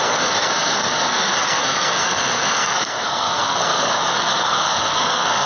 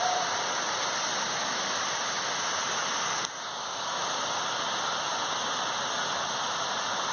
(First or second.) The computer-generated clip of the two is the first